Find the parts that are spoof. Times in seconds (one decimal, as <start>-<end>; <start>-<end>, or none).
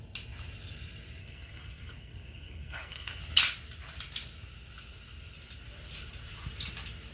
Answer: 1.2-3.2